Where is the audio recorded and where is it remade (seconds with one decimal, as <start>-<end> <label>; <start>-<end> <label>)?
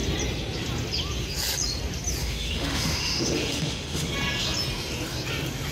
0.0-2.2 recorded; 2.2-4.1 remade; 4.1-5.7 recorded